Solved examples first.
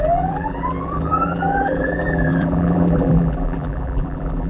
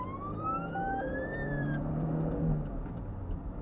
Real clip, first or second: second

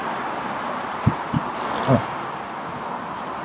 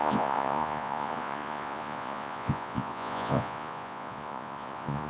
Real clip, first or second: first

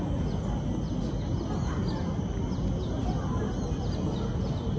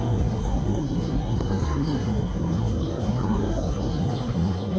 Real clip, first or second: first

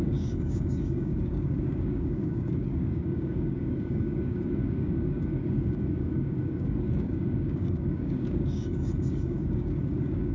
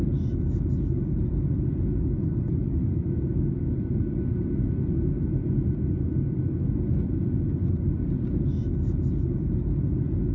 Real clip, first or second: second